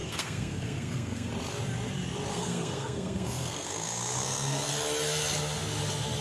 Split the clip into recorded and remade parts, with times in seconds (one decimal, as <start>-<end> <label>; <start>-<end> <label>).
0.0-1.3 remade; 1.3-2.3 recorded; 2.3-4.7 remade; 4.7-6.2 recorded